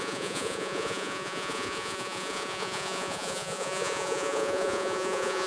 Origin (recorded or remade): remade